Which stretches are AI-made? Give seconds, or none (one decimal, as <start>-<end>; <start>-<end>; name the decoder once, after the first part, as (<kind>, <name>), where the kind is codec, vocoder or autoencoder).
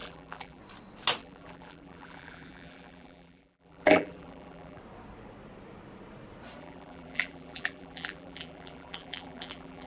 0.0-0.6 (vocoder, BigVGAN v2); 1.2-4.8; 6.6-9.9